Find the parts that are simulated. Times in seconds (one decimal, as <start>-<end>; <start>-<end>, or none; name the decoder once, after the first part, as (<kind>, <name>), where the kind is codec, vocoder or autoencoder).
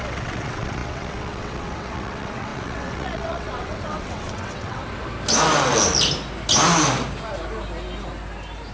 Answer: 0.0-4.8 (vocoder, WaveNeXt)